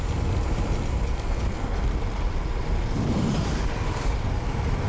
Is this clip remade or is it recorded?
recorded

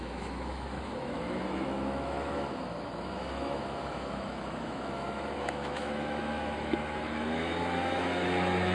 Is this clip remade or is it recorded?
remade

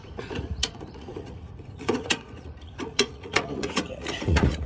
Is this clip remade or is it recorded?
remade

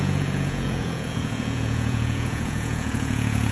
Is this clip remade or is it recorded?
remade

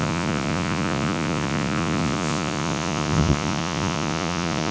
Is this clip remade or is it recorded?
remade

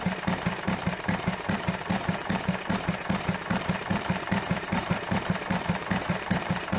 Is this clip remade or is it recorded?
remade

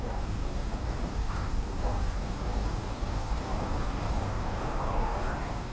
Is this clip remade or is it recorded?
remade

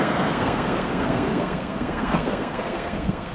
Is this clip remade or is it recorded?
remade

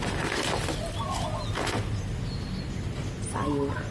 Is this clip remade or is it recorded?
recorded